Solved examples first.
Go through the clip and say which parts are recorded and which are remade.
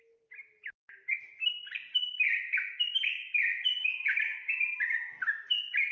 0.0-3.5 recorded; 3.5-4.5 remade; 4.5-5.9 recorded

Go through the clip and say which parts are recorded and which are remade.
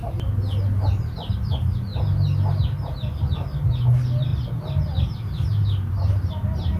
0.0-4.3 recorded; 4.3-6.3 remade; 6.3-6.8 recorded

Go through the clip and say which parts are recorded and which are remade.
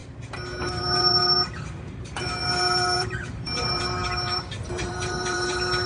0.0-0.6 recorded; 0.6-5.9 remade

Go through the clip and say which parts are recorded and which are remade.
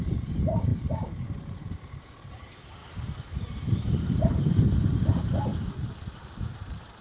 0.0-5.5 remade; 5.5-6.3 recorded; 6.3-7.0 remade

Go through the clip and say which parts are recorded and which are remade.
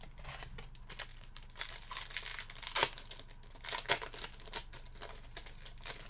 0.0-1.1 recorded; 1.1-1.7 remade; 1.7-6.1 recorded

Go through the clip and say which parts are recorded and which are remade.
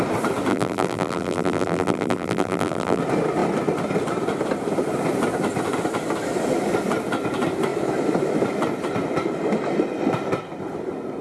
0.0-0.5 recorded; 0.5-3.0 remade; 3.0-11.2 recorded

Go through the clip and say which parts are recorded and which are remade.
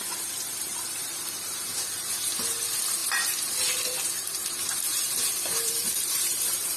0.0-6.8 remade